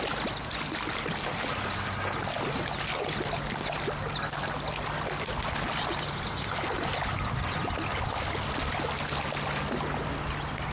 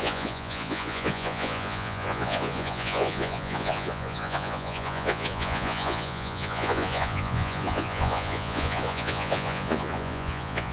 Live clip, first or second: first